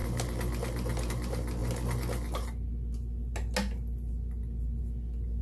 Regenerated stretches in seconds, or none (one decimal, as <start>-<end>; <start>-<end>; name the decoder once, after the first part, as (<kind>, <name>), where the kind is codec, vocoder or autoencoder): none